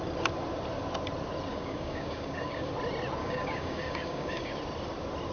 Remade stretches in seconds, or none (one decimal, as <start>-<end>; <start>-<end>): 1.5-2.7; 3.2-4.5